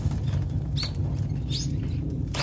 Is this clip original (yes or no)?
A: yes